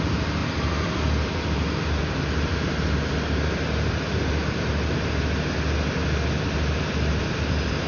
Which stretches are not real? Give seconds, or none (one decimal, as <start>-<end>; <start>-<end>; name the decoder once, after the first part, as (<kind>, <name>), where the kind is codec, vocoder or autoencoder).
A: 0.0-4.4 (vocoder, BigVGAN v2); 7.1-7.9